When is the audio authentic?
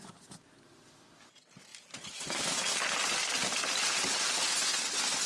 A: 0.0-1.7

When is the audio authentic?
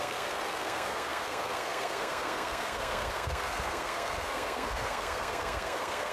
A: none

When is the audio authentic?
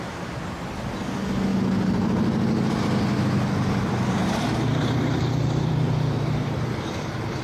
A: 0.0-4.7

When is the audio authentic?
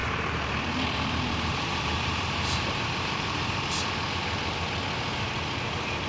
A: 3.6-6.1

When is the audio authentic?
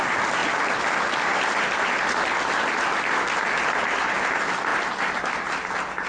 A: 0.0-6.1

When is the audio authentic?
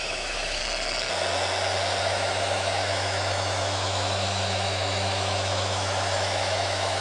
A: 0.6-2.0